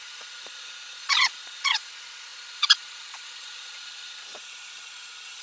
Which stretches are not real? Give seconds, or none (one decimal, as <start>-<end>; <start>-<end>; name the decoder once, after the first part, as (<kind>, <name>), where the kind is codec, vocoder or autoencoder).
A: 0.0-5.4 (vocoder, Vocos)